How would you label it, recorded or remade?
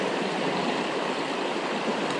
recorded